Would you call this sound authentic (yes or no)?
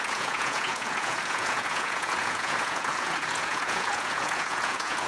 no